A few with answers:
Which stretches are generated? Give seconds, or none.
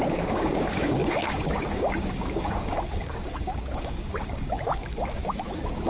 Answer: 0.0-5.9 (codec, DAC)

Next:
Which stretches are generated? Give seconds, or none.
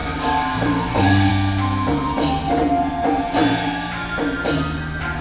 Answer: 0.0-1.3 (codec, DAC)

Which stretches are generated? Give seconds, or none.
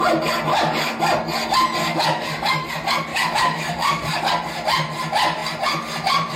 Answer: 0.5-1.0 (codec, DAC); 1.8-2.7; 3.1-4.3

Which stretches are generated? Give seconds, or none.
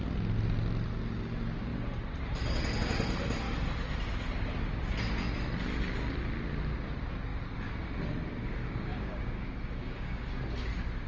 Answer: 8.6-10.3 (codec, DAC)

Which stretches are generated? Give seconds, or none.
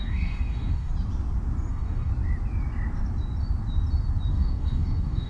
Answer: 0.0-0.9 (codec, DAC); 1.7-2.1; 4.3-5.3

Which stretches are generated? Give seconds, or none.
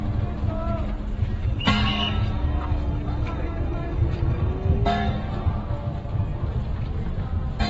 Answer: 1.4-5.1 (codec, DAC)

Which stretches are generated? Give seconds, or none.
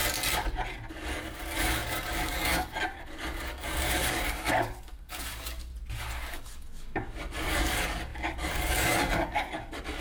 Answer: 0.9-5.7 (codec, DAC); 6.3-10.0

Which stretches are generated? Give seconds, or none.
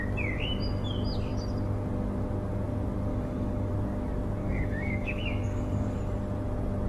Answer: 3.1-3.7 (codec, DAC); 4.4-6.0